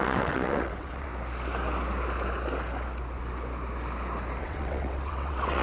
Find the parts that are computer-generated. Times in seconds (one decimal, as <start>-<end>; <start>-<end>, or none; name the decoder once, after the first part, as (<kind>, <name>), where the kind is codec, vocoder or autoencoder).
0.0-1.1 (vocoder, WaveNeXt); 4.4-5.6